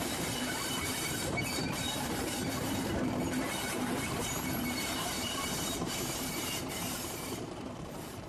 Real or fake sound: fake